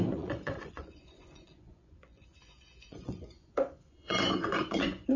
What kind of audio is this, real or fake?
fake